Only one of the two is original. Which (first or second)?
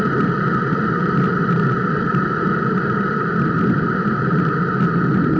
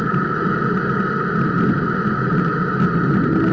second